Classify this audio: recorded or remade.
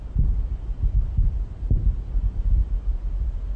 recorded